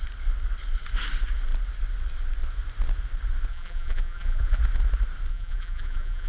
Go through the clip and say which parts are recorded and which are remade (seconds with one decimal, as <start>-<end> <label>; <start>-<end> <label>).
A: 0.0-3.5 recorded; 3.5-4.6 remade; 4.6-5.3 recorded; 5.3-6.3 remade